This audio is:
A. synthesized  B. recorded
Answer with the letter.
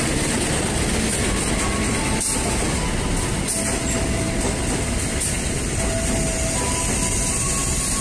B